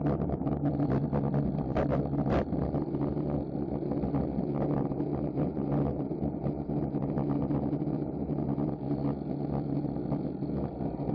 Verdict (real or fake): real